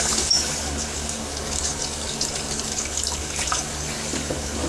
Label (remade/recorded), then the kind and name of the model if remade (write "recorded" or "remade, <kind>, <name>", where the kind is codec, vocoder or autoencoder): remade, codec, DAC